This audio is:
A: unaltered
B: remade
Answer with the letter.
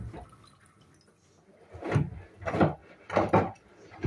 A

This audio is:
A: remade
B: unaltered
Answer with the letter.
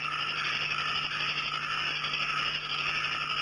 B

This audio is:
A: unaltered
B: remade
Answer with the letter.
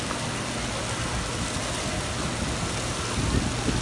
A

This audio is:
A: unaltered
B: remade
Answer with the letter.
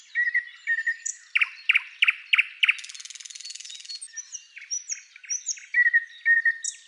A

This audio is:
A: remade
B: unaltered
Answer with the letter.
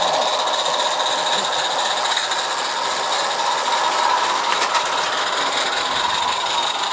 B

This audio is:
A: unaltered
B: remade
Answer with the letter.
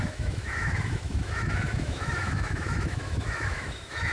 B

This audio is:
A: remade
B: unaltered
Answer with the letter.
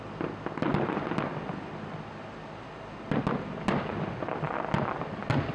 B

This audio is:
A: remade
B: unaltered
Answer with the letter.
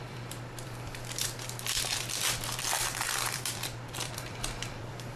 A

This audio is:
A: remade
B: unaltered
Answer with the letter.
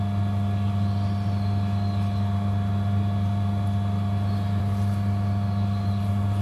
B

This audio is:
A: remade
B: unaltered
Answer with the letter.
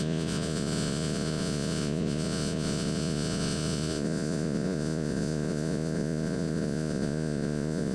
A